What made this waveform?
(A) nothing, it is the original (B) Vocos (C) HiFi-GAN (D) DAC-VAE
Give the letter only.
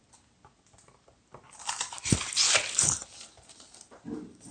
A